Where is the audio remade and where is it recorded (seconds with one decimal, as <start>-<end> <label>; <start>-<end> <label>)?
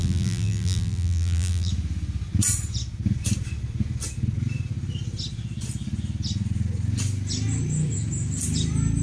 0.0-1.7 remade; 1.7-9.0 recorded